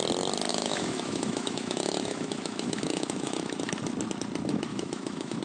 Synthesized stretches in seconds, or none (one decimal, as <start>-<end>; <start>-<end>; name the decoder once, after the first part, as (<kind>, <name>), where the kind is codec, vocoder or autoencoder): 0.5-3.7 (autoencoder, DAC-VAE); 4.7-5.4